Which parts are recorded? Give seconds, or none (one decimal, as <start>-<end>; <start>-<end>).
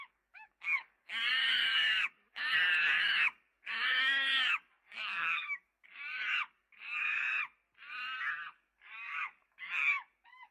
7.4-8.5